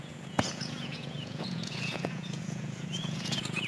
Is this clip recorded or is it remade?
remade